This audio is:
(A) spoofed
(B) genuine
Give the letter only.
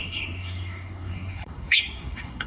A